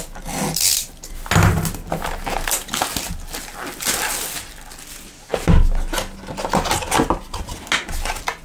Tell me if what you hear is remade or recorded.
recorded